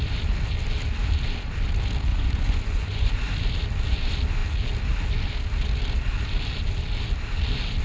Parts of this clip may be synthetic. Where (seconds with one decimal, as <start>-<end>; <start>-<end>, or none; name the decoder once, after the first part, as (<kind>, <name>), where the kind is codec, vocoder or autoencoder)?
2.1-3.1 (vocoder, Vocos)